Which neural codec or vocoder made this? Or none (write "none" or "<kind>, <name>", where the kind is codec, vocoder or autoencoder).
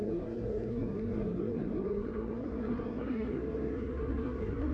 codec, SNAC